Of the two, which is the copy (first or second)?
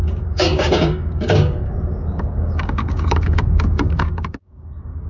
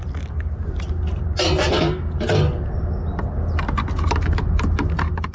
first